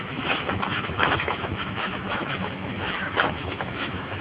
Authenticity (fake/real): fake